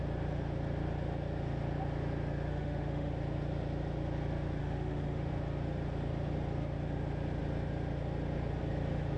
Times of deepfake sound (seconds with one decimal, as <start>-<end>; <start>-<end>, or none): 2.5-3.1; 4.6-5.3